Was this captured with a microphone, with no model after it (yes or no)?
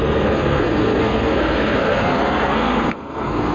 no